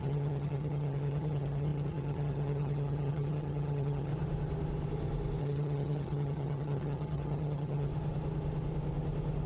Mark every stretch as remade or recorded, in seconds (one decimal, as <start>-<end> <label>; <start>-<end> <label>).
0.0-4.1 remade; 4.1-5.4 recorded; 5.4-7.9 remade; 7.9-9.5 recorded